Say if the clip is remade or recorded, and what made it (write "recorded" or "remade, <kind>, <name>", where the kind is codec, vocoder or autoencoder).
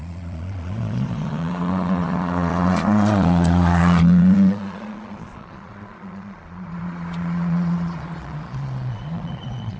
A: remade, vocoder, Vocos